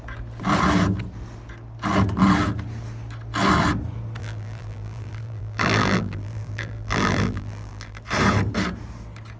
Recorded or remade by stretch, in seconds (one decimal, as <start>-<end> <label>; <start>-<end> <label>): 0.0-4.2 recorded; 4.2-8.0 remade; 8.0-9.4 recorded

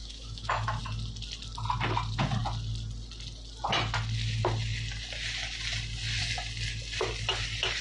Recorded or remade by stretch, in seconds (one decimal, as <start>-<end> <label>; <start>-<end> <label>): 0.0-0.8 remade; 0.8-7.8 recorded

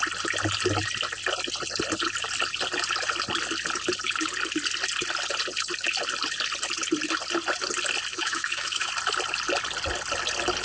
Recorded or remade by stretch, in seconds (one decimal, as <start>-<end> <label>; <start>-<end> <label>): 0.0-8.1 recorded; 8.1-8.9 remade; 8.9-10.6 recorded